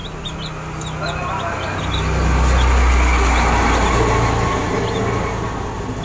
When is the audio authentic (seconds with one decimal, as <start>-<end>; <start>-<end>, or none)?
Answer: 0.0-6.0